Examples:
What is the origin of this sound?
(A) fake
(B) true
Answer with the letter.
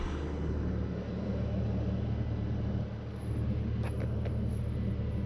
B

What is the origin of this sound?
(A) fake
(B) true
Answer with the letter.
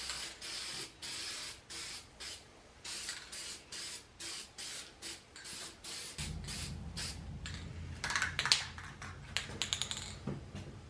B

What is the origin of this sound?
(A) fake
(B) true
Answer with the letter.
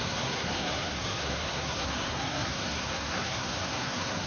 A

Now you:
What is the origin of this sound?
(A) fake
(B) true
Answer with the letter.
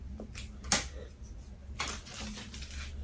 B